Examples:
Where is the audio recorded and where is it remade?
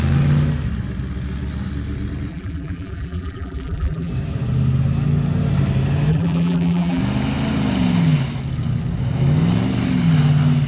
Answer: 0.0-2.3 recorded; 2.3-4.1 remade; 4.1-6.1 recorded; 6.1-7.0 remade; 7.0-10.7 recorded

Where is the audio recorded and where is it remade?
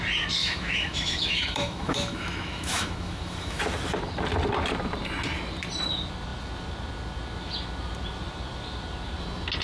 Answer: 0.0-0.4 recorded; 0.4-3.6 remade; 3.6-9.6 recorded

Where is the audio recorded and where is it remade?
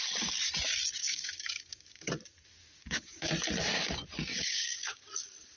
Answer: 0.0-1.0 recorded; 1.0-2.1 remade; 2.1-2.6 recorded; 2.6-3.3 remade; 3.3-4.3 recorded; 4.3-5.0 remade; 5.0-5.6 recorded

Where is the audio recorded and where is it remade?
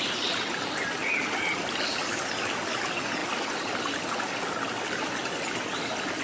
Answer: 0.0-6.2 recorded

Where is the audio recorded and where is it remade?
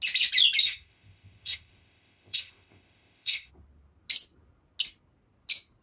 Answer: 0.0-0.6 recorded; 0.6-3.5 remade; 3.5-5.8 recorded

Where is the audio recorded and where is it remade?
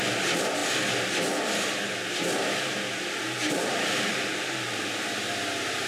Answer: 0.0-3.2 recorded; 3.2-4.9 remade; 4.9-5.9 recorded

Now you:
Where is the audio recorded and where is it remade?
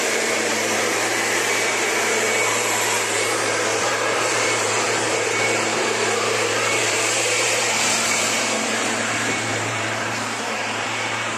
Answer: 0.0-1.1 remade; 1.1-2.5 recorded; 2.5-11.4 remade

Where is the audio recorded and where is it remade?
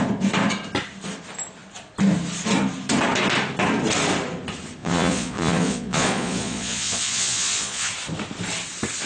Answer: 0.0-4.8 recorded; 4.8-7.9 remade; 7.9-9.1 recorded